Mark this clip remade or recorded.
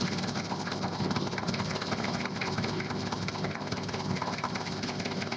remade